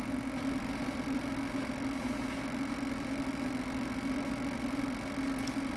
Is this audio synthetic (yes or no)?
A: no